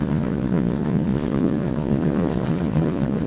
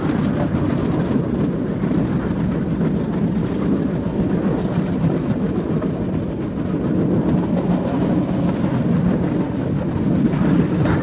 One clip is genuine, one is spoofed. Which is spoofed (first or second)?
first